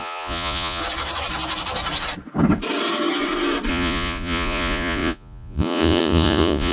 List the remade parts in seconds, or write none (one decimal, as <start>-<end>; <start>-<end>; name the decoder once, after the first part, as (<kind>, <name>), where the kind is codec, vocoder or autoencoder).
0.0-0.8 (vocoder, Vocos); 3.7-6.7